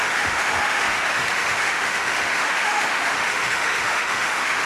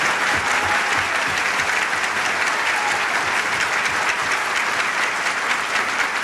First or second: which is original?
second